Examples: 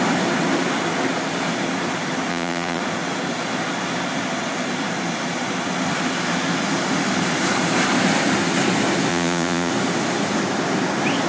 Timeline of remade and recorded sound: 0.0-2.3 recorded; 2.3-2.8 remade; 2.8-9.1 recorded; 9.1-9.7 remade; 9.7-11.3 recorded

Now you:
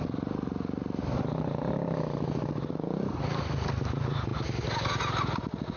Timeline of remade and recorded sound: 0.0-5.8 recorded

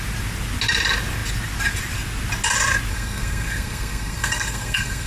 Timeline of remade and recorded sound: 0.0-2.9 recorded; 2.9-5.1 remade

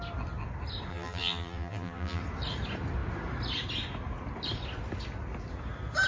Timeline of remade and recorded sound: 0.0-0.9 recorded; 0.9-2.2 remade; 2.2-6.1 recorded

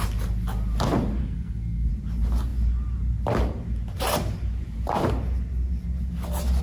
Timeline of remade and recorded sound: 0.0-1.2 recorded; 1.2-1.9 remade; 1.9-6.6 recorded

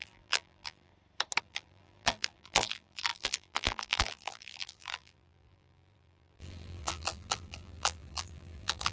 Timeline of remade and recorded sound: 0.0-0.9 remade; 0.9-1.4 recorded; 1.4-8.9 remade

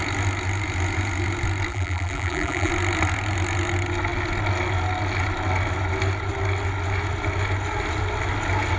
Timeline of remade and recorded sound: 0.0-1.7 recorded; 1.7-2.7 remade; 2.7-8.8 recorded